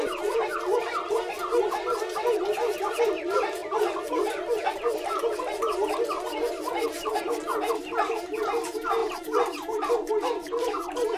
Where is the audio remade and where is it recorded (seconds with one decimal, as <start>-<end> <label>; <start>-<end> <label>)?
0.0-11.2 recorded